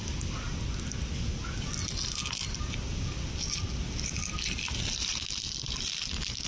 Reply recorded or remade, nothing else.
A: recorded